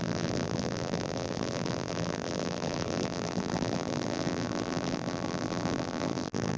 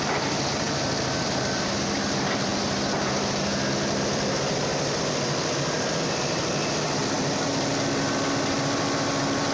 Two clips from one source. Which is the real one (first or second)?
second